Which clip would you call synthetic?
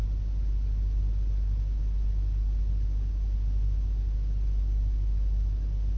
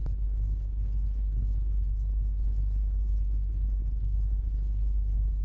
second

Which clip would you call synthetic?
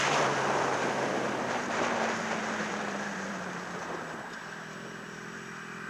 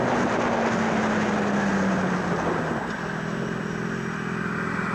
first